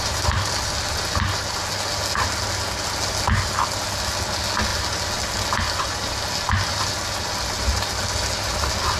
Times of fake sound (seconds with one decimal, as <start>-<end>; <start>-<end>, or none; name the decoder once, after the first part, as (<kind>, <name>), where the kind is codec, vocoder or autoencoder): none

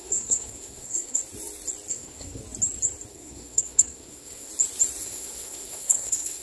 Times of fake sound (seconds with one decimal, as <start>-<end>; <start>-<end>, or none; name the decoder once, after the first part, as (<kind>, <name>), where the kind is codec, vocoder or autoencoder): 0.0-1.2 (codec, SNAC); 1.9-2.4; 3.1-4.5; 5.0-6.4

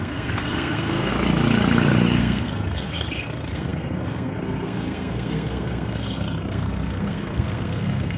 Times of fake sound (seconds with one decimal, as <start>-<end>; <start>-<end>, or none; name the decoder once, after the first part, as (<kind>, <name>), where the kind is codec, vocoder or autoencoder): 0.0-1.1 (codec, SNAC); 2.2-8.2